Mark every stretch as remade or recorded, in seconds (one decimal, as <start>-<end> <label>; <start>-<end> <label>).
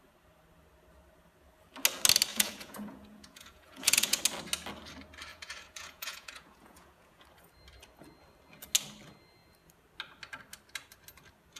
0.0-2.3 recorded; 2.3-4.2 remade; 4.2-5.3 recorded; 5.3-7.2 remade; 7.2-11.6 recorded